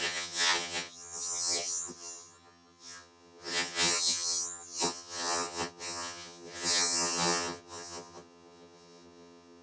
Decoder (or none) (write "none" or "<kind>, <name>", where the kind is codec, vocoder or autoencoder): vocoder, HiFi-GAN